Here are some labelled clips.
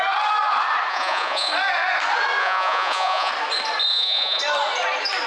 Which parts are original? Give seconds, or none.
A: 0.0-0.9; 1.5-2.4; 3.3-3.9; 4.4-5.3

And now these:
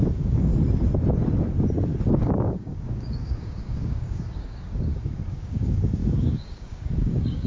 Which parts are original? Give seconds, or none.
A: 0.5-2.1

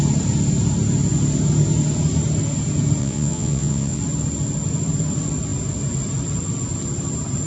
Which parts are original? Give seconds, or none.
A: 0.0-3.0; 4.0-7.5